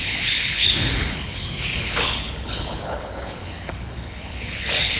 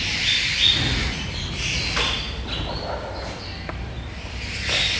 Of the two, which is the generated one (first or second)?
first